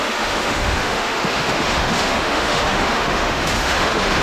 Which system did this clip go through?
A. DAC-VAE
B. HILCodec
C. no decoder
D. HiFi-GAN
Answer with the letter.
A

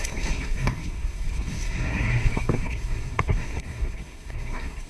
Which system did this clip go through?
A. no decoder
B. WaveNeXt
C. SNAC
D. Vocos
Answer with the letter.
C